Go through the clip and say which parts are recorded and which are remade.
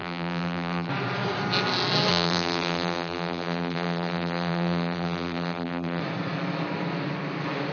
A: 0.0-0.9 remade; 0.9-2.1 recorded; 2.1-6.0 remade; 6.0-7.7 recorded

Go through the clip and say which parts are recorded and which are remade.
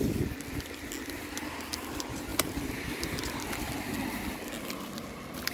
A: 0.0-5.5 recorded